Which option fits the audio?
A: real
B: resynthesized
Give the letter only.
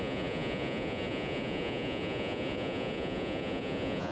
B